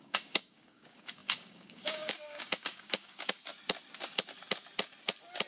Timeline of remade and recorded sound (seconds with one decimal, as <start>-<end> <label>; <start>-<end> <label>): 0.0-3.5 remade; 3.5-5.5 recorded